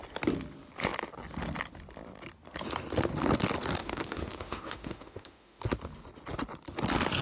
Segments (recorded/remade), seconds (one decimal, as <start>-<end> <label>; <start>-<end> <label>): 0.0-3.8 recorded; 3.8-5.6 remade; 5.6-7.2 recorded